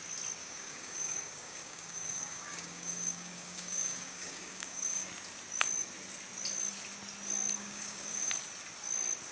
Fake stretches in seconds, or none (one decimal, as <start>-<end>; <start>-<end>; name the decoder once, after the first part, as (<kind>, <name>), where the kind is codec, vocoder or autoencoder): 0.4-5.1 (codec, DAC); 7.6-8.3